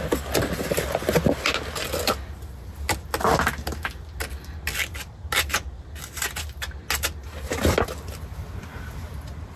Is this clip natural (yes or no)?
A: yes